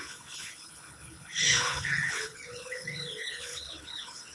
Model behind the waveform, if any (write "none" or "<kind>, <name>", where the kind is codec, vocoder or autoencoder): codec, HILCodec